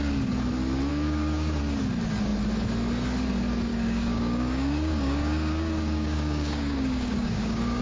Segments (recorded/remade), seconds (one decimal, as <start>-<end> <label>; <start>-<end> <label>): 0.0-0.9 recorded; 0.9-1.6 remade; 1.6-3.7 recorded; 3.7-7.8 remade